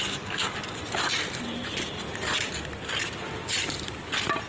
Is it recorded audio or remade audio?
recorded